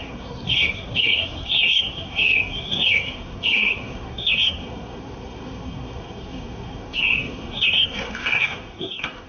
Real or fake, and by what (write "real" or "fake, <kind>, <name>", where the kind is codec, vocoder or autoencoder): fake, codec, SNAC